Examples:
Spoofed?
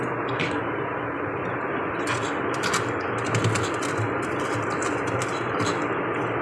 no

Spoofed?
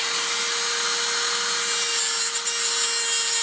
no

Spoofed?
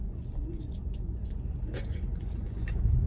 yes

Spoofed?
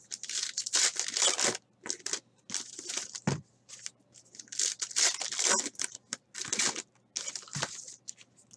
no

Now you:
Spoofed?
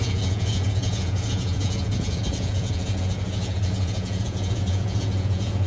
yes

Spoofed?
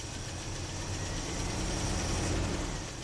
no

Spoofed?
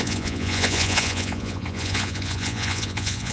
yes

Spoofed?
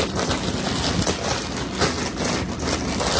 no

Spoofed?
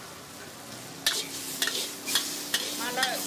no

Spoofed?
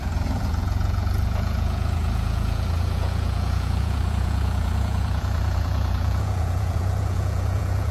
yes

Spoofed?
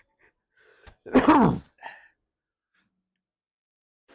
no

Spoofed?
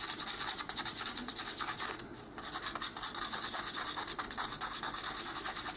no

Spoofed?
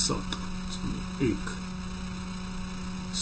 no